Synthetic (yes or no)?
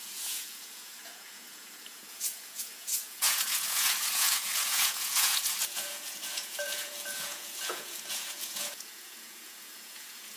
yes